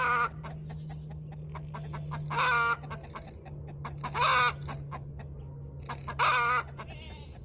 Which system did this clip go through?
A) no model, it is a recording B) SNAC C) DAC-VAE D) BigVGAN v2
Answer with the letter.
A